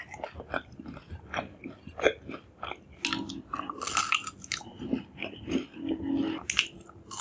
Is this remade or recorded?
recorded